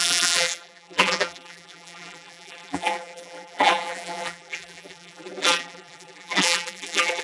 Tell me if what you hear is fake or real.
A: fake